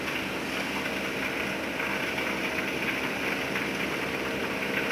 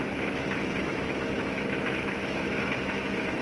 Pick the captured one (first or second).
first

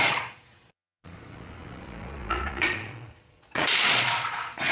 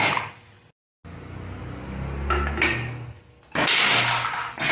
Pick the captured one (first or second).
second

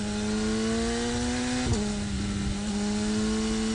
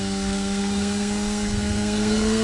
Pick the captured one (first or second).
first